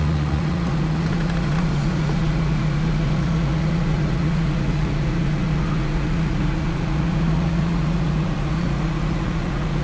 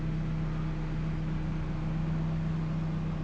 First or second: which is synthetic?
first